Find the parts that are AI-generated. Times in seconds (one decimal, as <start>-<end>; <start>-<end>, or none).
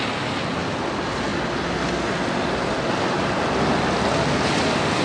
none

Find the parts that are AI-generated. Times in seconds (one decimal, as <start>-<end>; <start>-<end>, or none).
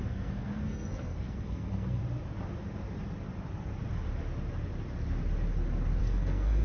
0.0-2.0; 6.0-6.6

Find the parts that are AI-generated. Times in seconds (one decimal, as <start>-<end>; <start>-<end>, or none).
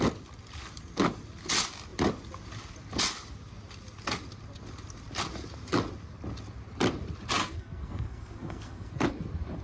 7.4-9.1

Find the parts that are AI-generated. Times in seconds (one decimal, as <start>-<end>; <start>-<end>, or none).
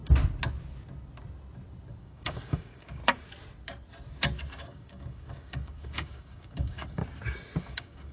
2.0-3.0; 4.5-7.0; 7.6-8.1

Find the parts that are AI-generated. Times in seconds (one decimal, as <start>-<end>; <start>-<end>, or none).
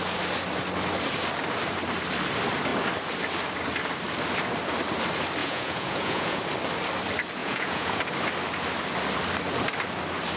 5.4-6.4; 7.4-8.0